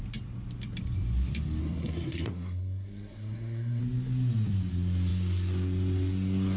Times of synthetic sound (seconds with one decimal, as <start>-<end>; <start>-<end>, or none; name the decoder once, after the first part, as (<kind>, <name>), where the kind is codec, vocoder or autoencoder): 1.6-3.8 (codec, SNAC)